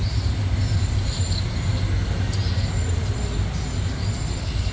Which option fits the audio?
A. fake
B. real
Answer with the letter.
B